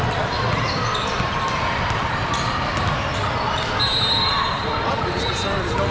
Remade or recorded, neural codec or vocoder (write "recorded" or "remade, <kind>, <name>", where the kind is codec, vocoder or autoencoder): recorded